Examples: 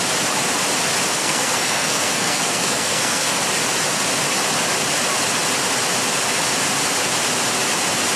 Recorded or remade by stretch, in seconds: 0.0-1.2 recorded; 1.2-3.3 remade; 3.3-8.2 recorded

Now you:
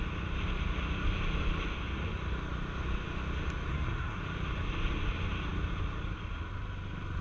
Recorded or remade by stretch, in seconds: 0.0-3.7 recorded; 3.7-4.2 remade; 4.2-7.2 recorded

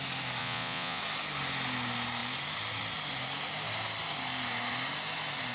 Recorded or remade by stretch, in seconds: 0.0-0.4 recorded; 0.4-1.0 remade; 1.0-5.5 recorded

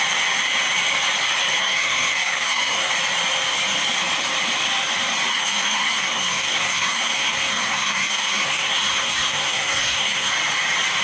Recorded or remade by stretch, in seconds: 0.0-1.6 recorded; 1.6-2.9 remade; 2.9-5.3 recorded; 5.3-10.3 remade; 10.3-11.0 recorded

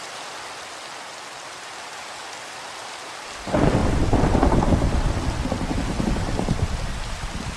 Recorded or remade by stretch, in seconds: 0.0-7.6 recorded